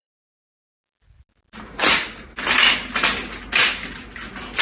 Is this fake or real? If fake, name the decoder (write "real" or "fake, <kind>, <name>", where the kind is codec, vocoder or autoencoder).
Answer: real